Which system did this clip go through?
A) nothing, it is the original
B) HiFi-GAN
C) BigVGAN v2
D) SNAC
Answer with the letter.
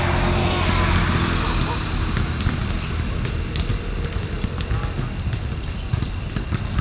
A